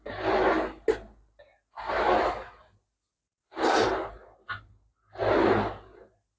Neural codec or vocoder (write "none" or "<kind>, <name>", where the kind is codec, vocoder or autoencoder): none